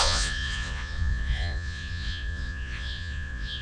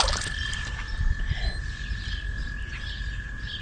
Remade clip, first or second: first